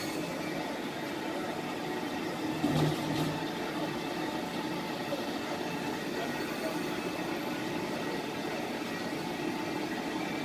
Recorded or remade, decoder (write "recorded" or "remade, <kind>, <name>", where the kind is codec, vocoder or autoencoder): remade, vocoder, BigVGAN v2